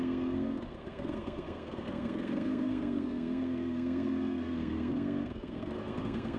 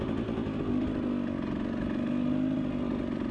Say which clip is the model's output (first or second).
first